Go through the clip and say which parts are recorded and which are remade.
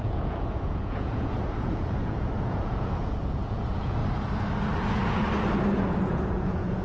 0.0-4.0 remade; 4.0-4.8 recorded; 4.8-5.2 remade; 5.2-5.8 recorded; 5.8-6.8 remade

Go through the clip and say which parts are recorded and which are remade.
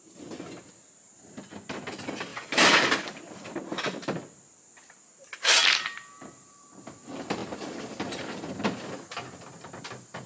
0.0-10.3 recorded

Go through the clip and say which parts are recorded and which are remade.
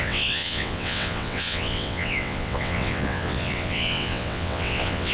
0.0-5.1 remade